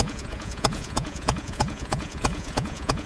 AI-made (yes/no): yes